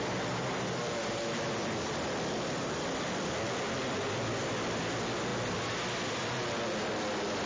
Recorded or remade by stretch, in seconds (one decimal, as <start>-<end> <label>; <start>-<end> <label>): 0.0-7.5 recorded